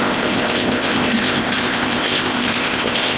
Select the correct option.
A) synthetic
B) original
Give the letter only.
A